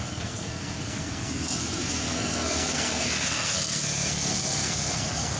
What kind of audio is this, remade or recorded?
remade